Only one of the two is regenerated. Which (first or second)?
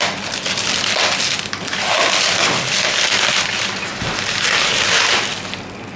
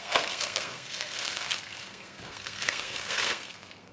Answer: second